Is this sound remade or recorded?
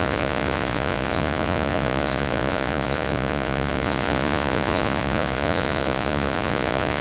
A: remade